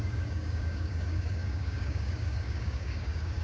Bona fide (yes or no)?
no